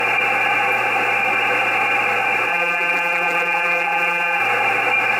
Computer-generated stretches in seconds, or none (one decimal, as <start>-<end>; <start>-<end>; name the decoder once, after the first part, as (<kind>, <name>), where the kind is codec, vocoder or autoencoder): 2.5-4.4 (vocoder, BigVGAN v2)